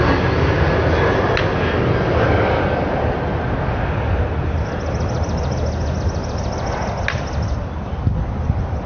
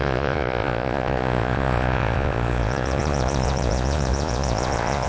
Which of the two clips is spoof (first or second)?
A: second